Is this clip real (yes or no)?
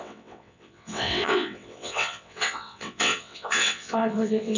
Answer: no